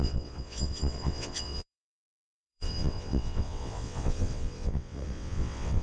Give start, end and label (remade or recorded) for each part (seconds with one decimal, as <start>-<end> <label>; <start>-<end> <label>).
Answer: 0.0-5.8 remade